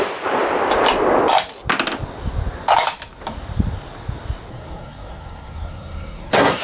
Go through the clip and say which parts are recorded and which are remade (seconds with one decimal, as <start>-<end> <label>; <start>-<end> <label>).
0.0-4.5 recorded; 4.5-6.6 remade